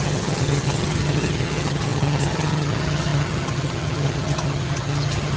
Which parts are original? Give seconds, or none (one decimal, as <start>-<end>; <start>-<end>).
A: none